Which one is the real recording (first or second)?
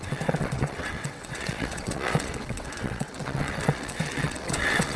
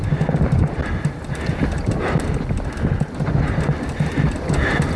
second